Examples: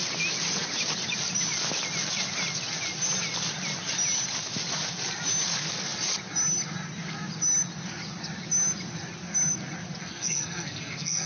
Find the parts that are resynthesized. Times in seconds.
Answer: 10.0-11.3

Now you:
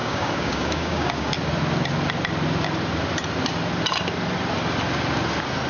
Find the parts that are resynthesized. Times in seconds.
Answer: 0.0-1.3

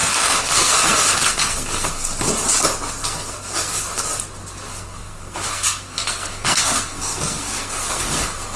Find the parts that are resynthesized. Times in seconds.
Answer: 0.0-2.1; 3.0-4.0; 4.7-8.6

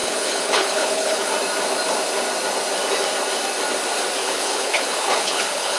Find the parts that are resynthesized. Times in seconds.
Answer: 0.0-1.3; 4.2-5.8

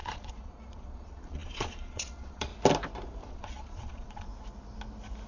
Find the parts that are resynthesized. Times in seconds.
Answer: 0.0-2.5; 3.3-4.3

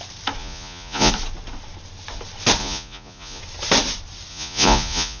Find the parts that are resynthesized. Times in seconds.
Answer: 0.4-1.1; 2.6-3.4; 4.3-5.2

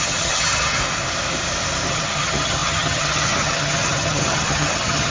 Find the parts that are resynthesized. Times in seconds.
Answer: 0.0-0.8; 1.9-5.1

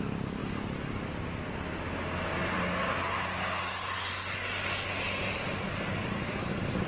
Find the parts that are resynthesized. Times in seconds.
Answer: 0.4-1.0